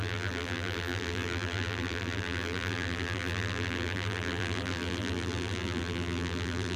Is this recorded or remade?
remade